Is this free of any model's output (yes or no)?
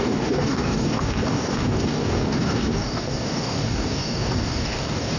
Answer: no